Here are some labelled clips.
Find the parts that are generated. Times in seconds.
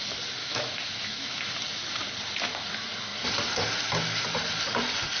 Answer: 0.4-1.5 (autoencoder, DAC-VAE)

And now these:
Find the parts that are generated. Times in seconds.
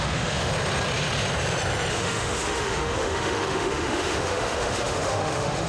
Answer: 0.0-0.5 (autoencoder, DAC-VAE); 1.9-5.7